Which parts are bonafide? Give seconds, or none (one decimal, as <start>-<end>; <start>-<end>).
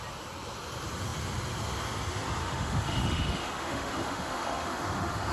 0.0-2.4